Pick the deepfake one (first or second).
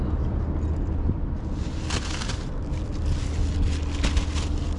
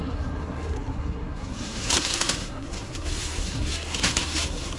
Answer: second